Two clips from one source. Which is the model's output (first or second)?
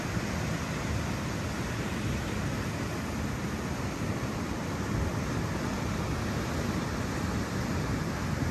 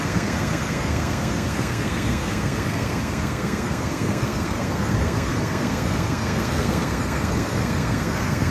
second